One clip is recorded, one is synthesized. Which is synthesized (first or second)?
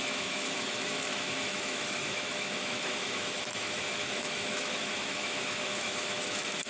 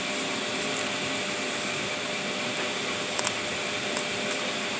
first